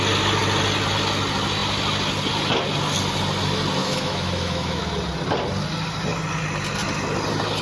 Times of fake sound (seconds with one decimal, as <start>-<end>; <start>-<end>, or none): 3.8-4.8